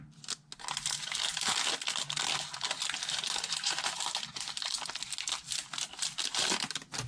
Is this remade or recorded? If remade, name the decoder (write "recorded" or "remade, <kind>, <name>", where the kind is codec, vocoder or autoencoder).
recorded